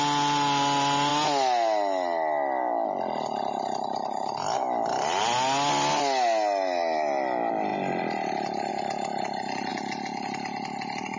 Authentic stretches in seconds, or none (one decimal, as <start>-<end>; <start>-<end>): 0.0-11.2